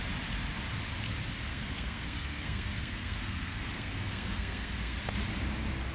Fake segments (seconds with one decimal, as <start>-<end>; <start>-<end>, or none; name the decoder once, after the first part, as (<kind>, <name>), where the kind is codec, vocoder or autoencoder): 1.5-5.0 (codec, SNAC)